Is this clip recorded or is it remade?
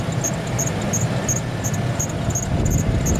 recorded